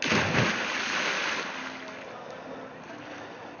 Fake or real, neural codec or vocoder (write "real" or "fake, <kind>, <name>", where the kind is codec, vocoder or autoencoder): real